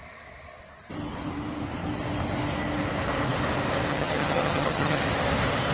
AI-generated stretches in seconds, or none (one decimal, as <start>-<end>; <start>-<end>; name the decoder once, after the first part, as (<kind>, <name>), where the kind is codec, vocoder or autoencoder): 3.9-5.0 (vocoder, HiFi-GAN)